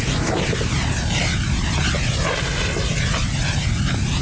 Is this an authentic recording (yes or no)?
yes